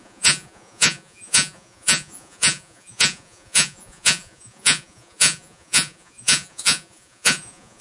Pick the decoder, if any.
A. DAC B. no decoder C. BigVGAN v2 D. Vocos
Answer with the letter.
D